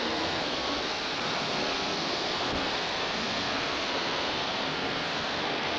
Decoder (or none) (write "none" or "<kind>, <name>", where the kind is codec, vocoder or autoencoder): codec, SNAC